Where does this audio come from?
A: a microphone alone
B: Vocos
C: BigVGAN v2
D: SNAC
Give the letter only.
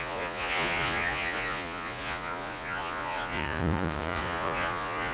B